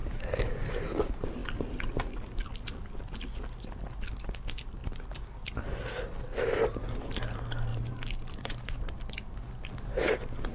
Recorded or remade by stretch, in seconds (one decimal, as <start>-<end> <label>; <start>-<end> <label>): 0.0-0.7 remade; 0.7-7.7 recorded; 7.7-9.0 remade; 9.0-10.5 recorded